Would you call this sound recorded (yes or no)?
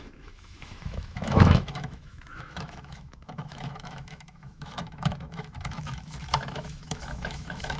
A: no